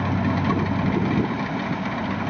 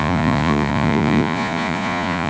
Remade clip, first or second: second